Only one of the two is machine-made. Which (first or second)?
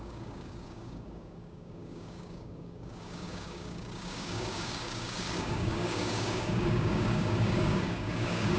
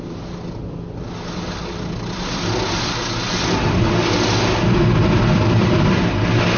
first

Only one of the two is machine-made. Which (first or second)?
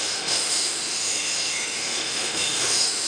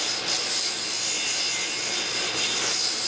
first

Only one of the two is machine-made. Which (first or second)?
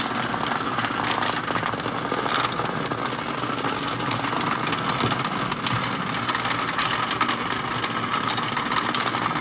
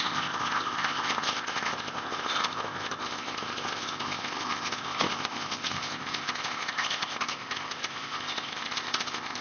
second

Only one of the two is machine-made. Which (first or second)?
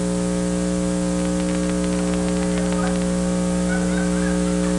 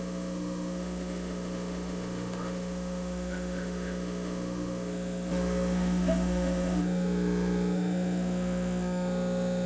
second